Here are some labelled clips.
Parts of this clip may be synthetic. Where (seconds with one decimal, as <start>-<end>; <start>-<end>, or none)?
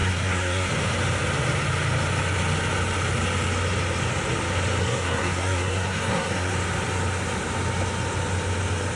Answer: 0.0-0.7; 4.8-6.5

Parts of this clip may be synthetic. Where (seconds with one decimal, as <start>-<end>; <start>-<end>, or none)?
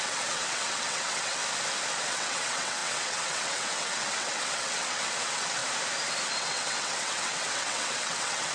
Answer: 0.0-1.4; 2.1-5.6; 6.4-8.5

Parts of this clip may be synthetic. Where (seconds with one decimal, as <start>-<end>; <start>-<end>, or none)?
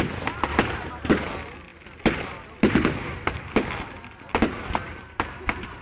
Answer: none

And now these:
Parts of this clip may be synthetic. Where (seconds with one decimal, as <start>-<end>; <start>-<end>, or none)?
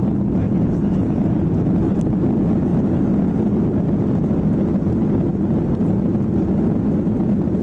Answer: none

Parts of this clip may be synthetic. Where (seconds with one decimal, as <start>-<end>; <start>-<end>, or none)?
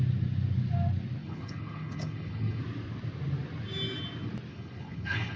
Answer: 1.2-2.6; 4.5-5.4